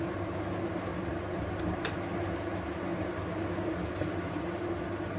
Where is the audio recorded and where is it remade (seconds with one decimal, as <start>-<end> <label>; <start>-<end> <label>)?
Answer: 0.0-0.9 recorded; 0.9-2.0 remade; 2.0-2.9 recorded; 2.9-4.4 remade; 4.4-5.2 recorded